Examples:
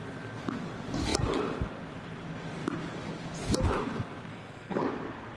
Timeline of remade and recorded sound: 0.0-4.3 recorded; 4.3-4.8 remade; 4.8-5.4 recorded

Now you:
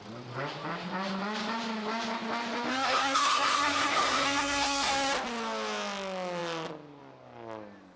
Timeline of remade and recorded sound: 0.0-2.7 recorded; 2.7-4.9 remade; 4.9-8.0 recorded